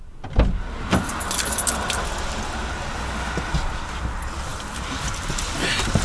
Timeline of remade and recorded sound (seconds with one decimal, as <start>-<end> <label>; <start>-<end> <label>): 0.0-6.0 recorded